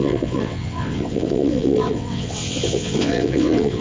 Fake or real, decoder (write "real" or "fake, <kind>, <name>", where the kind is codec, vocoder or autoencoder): fake, vocoder, WaveNeXt